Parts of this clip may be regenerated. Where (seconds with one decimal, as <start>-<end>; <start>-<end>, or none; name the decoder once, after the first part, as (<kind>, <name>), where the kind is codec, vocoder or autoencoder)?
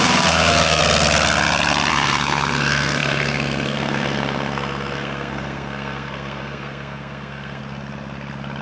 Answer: 0.0-0.8 (codec, SNAC); 1.9-7.6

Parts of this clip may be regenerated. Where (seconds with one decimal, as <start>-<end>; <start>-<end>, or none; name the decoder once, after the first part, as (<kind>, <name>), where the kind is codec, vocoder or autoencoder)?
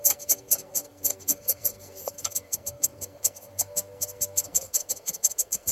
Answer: 0.0-5.7 (codec, SNAC)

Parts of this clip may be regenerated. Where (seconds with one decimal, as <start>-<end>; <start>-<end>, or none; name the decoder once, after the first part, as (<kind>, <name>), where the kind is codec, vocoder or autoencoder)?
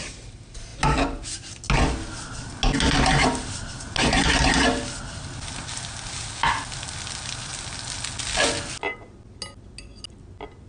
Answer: none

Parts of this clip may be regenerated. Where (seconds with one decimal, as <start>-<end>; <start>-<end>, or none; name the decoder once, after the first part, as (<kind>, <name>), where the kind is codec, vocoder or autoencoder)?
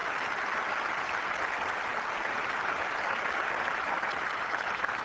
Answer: none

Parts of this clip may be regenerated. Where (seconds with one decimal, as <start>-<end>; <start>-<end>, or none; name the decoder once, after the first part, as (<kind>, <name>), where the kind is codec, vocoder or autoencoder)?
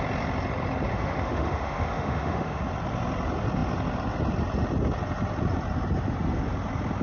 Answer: 0.9-2.6 (autoencoder, DAC-VAE)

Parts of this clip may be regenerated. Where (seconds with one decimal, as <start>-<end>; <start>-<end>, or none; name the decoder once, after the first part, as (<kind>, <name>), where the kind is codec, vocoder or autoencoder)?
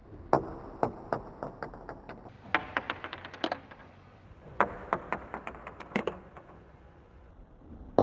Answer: 3.8-4.9 (vocoder, Vocos); 5.6-7.3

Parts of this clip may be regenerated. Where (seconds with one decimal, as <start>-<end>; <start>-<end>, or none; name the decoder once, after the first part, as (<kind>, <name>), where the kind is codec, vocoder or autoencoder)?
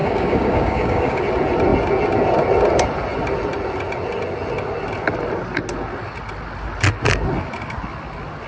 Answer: 0.0-1.2 (codec, DAC)